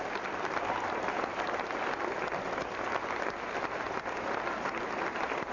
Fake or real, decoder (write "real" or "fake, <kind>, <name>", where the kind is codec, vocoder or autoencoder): real